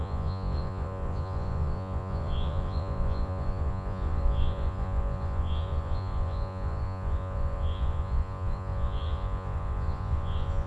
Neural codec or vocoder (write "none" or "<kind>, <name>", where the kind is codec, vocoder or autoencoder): vocoder, Vocos